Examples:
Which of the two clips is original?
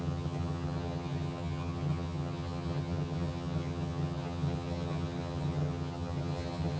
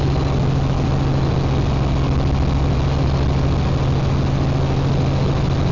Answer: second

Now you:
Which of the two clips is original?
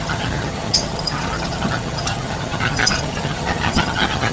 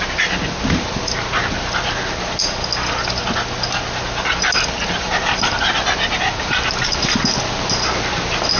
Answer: second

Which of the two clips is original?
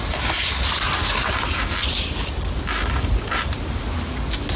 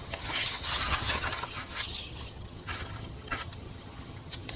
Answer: first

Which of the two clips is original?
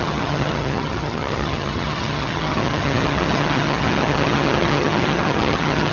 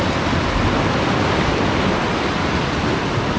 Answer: second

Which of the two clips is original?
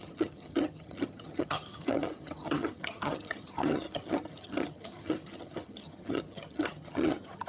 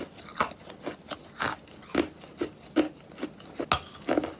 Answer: second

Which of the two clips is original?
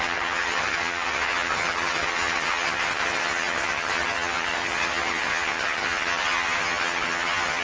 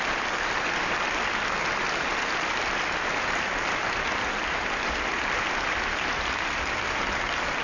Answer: second